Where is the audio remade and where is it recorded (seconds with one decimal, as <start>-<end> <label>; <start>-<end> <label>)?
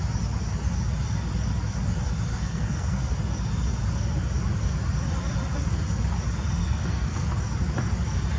0.0-2.3 recorded; 2.3-3.1 remade; 3.1-6.6 recorded; 6.6-7.3 remade; 7.3-8.4 recorded